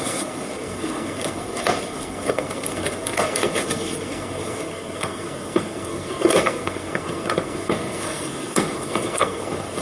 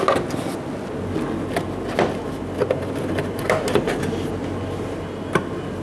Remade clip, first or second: first